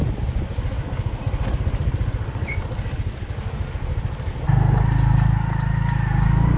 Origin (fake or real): real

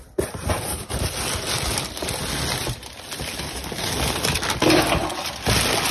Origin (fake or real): real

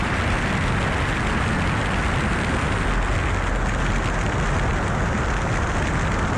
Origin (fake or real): real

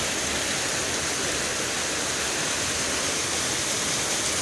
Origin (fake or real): real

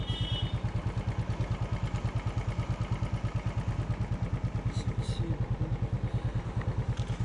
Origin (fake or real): real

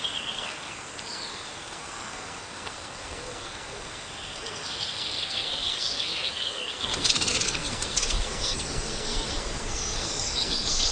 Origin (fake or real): fake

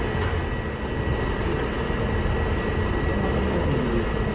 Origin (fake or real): real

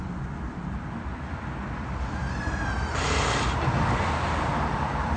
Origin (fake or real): real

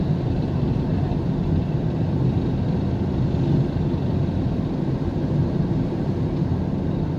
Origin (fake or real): fake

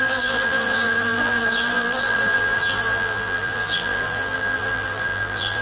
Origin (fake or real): fake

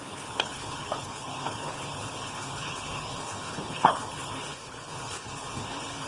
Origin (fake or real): fake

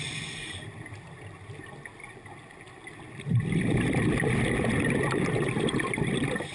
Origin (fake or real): real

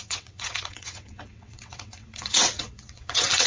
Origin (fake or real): fake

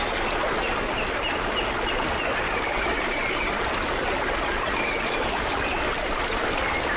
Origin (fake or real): real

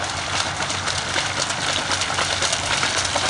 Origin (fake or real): real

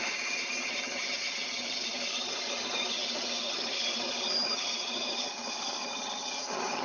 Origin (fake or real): fake